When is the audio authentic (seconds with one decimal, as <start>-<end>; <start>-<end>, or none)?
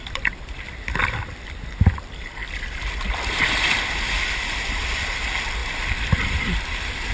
2.4-4.4